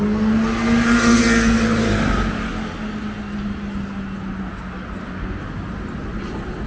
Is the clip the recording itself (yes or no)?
yes